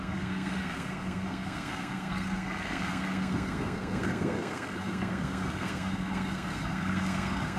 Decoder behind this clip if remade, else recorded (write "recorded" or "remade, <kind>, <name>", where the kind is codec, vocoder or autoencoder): remade, codec, SNAC